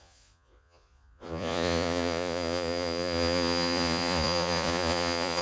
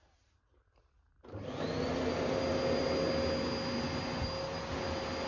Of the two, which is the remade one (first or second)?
first